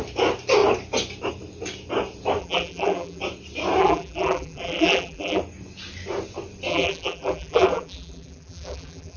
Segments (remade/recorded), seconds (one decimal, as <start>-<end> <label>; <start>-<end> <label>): 0.0-2.4 recorded; 2.4-3.2 remade; 3.2-3.8 recorded; 3.8-5.4 remade; 5.4-6.7 recorded; 6.7-9.2 remade